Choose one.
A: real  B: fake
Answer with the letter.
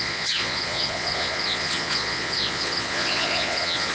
B